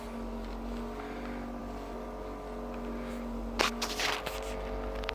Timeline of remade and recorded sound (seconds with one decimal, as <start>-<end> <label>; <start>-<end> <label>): 0.0-1.6 recorded; 1.6-5.1 remade

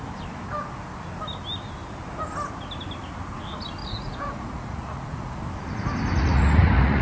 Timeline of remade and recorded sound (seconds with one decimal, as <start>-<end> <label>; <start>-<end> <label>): 0.0-3.8 recorded; 3.8-5.4 remade; 5.4-6.2 recorded; 6.2-7.0 remade